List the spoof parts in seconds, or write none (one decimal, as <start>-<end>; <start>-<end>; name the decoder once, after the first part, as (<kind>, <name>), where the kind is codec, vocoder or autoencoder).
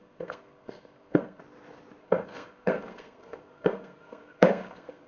0.0-1.4 (codec, SNAC); 2.0-5.1